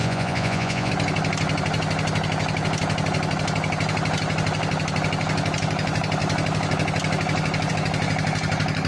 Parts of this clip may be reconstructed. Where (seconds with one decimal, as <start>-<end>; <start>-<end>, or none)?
0.0-0.9